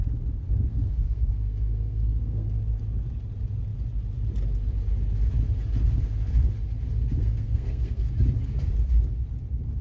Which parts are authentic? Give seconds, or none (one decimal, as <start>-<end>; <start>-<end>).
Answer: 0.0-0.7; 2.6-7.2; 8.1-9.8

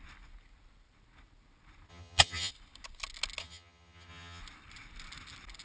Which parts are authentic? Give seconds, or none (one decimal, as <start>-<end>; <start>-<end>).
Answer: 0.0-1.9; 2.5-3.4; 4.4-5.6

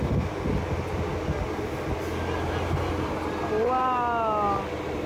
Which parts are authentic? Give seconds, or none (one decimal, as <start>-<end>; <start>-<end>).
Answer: 0.0-5.1

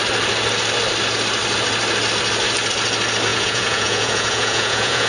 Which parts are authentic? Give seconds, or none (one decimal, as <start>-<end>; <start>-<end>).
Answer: 0.0-3.3